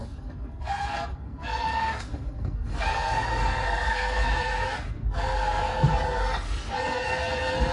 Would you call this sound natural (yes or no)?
no